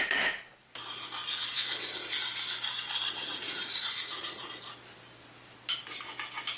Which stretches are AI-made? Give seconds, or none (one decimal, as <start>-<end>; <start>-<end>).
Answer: 3.2-4.5